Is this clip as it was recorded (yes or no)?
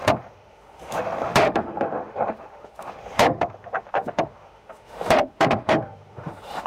no